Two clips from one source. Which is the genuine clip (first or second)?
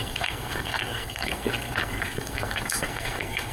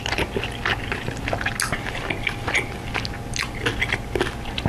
second